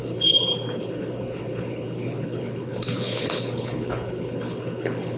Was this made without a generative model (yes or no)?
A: no